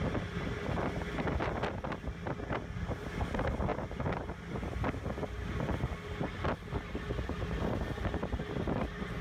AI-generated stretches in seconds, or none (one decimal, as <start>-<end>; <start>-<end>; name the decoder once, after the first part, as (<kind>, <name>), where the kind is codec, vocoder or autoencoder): none